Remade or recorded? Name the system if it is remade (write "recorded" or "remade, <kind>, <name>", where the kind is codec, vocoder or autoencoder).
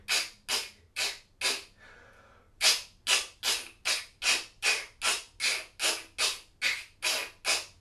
recorded